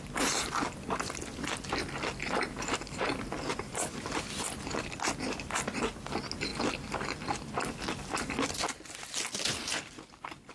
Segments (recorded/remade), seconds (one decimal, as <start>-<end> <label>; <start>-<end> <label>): 0.0-2.2 recorded; 2.2-3.9 remade; 3.9-10.5 recorded